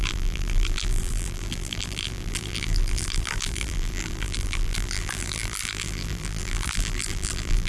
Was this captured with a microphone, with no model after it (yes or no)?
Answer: no